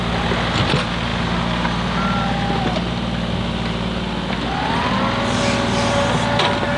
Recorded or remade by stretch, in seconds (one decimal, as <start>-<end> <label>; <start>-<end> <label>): 0.0-6.8 recorded